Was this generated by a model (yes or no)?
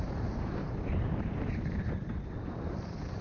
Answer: yes